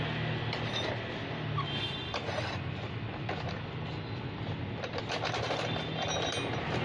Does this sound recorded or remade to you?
recorded